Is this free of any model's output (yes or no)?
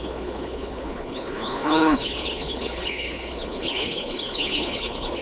no